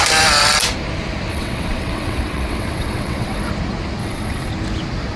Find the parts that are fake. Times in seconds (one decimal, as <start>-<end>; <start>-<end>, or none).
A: 1.3-3.5; 4.0-4.5